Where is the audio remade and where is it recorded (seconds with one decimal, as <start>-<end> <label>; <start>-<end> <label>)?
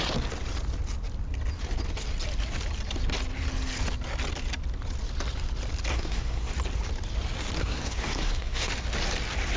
0.0-5.9 recorded; 5.9-6.5 remade; 6.5-7.6 recorded; 7.6-8.7 remade; 8.7-9.6 recorded